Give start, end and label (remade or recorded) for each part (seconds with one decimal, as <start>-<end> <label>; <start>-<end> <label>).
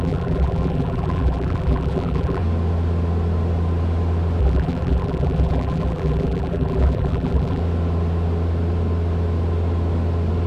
0.0-2.4 remade; 2.4-4.4 recorded; 4.4-7.6 remade; 7.6-10.5 recorded